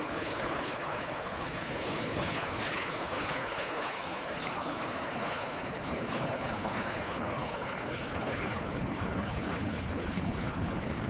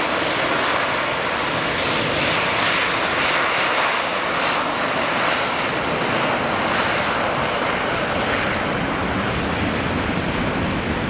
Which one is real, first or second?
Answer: second